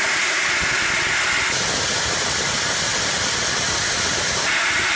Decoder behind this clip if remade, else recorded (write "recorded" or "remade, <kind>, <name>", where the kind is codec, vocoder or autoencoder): recorded